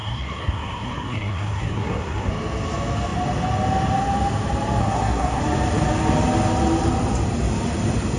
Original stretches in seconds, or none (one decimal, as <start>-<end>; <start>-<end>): 2.3-4.8; 5.4-8.2